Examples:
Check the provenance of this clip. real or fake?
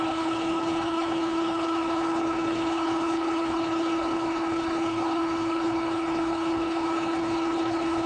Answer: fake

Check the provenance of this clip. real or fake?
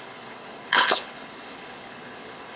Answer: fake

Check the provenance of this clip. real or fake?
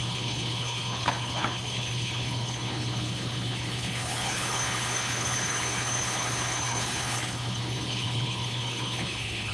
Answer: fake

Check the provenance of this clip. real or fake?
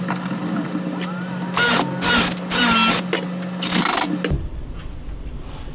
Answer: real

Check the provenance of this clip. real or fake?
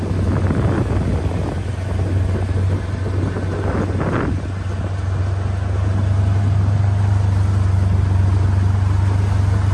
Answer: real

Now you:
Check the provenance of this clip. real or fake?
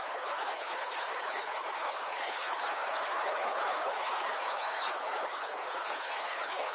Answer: fake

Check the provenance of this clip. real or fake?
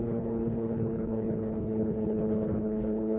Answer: fake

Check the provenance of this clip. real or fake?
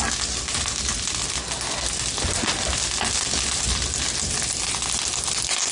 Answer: real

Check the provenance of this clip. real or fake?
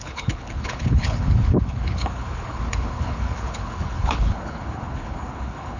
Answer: fake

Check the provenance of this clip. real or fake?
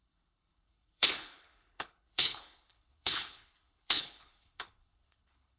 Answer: fake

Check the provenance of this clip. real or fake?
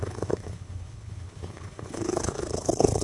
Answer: fake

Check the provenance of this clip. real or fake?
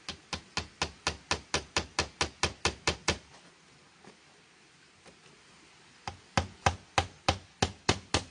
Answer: real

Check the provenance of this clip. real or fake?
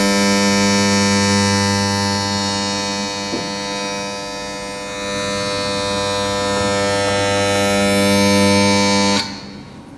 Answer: real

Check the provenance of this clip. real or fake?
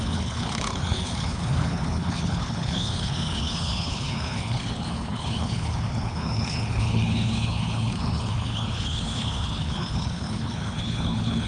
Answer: fake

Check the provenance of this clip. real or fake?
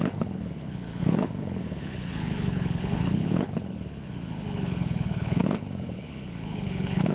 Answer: fake